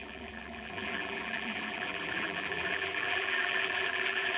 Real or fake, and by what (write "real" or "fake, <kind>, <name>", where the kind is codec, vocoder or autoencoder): fake, vocoder, BigVGAN v2